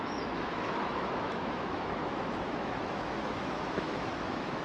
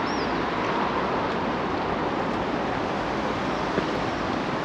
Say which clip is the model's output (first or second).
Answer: first